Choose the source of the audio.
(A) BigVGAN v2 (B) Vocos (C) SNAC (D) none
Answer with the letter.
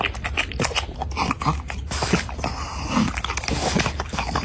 D